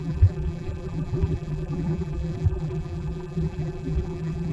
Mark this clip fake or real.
fake